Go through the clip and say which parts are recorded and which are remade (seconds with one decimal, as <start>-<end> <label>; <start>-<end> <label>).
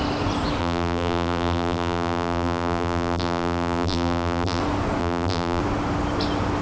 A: 0.0-0.6 recorded; 0.6-4.6 remade; 4.6-5.0 recorded; 5.0-5.6 remade; 5.6-6.6 recorded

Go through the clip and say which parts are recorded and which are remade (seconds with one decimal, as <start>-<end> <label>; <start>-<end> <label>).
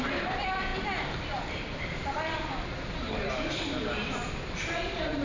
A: 0.0-5.2 recorded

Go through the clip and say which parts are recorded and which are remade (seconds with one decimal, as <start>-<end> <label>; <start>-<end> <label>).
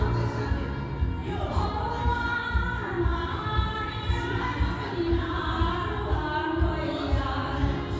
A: 0.0-1.2 recorded; 1.2-1.9 remade; 1.9-3.1 recorded; 3.1-5.4 remade; 5.4-8.0 recorded